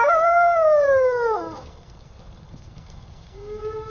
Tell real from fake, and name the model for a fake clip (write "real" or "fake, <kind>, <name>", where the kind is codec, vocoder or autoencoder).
fake, codec, SNAC